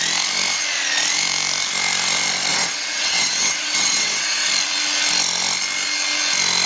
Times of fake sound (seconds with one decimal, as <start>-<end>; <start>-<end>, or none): 2.5-4.5